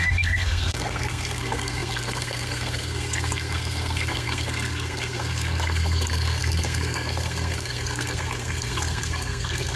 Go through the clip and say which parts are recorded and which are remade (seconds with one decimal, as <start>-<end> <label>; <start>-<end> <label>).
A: 0.0-9.8 remade